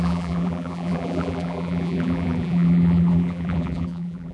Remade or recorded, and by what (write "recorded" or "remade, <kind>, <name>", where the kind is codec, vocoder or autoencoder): remade, vocoder, BigVGAN v2